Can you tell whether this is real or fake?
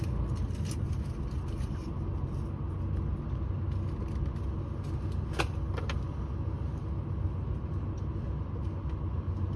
real